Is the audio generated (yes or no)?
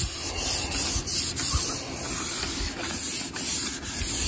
no